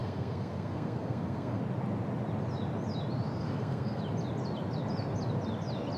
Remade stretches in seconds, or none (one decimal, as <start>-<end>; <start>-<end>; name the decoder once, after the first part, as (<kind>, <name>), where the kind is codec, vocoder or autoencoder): 0.0-1.6 (codec, SNAC); 3.4-4.0